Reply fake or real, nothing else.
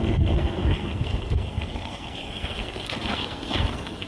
fake